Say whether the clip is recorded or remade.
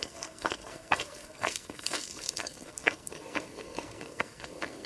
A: remade